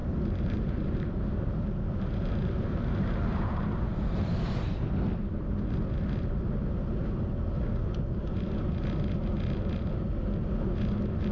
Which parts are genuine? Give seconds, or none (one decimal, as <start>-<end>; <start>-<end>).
4.9-11.3